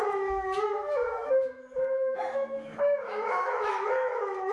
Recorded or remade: remade